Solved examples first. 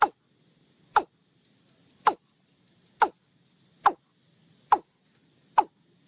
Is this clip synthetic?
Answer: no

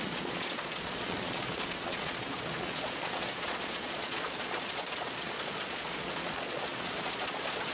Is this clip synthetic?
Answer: yes